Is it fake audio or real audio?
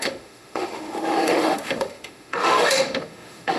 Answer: fake